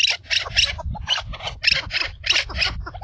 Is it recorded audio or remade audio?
remade